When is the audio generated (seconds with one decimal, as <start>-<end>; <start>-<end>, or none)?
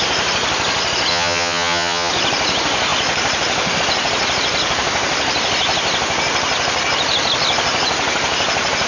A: 1.1-2.1